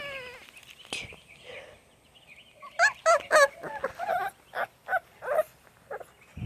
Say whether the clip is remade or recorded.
recorded